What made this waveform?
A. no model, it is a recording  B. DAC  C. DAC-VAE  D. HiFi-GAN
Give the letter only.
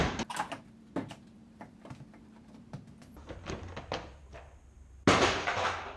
A